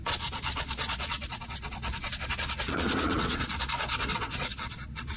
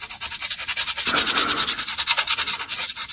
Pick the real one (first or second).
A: second